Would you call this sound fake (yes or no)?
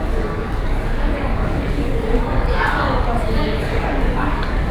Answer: yes